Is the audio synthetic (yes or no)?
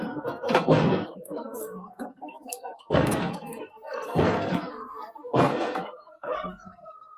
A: yes